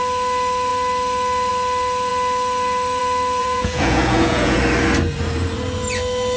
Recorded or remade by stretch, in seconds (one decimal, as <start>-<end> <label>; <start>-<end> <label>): 0.0-3.4 recorded; 3.4-4.6 remade; 4.6-6.4 recorded